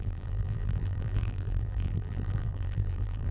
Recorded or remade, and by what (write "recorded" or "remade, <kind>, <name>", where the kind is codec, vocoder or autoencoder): remade, vocoder, BigVGAN v2